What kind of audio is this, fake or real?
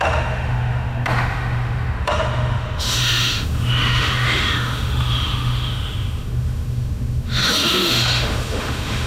fake